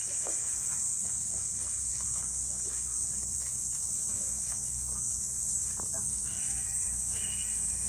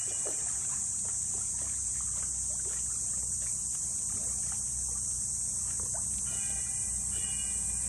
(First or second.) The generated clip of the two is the first